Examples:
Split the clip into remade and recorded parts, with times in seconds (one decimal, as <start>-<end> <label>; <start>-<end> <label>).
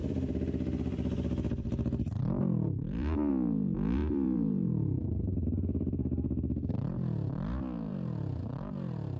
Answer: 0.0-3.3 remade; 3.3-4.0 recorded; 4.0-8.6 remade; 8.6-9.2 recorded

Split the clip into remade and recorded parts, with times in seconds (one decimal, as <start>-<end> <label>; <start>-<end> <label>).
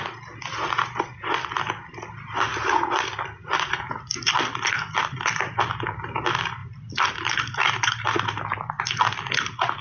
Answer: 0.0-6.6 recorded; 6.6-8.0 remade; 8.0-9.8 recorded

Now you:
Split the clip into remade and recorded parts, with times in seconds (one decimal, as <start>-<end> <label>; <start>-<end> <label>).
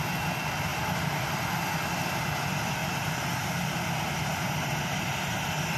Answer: 0.0-0.7 recorded; 0.7-2.2 remade; 2.2-2.8 recorded; 2.8-3.8 remade; 3.8-5.8 recorded